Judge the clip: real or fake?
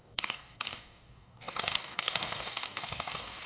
fake